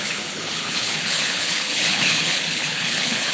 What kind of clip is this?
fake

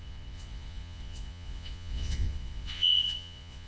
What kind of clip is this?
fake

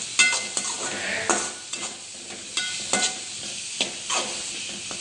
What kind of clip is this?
real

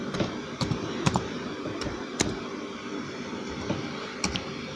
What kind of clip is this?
fake